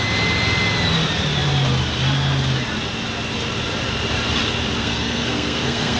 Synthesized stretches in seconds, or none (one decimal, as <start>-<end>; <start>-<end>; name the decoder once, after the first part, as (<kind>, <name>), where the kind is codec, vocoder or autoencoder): 4.8-6.0 (codec, SNAC)